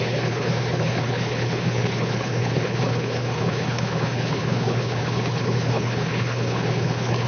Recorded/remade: remade